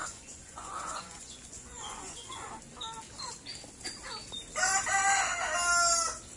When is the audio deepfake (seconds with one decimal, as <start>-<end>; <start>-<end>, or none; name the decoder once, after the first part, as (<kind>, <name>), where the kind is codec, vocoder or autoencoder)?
0.0-2.5 (vocoder, Vocos)